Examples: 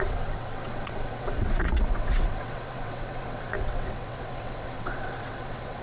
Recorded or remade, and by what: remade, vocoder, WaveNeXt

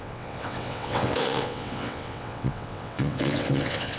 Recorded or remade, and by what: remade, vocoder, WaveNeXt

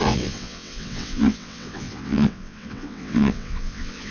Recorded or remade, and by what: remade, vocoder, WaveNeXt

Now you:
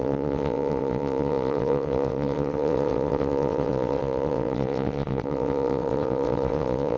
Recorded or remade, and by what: remade, vocoder, WaveNeXt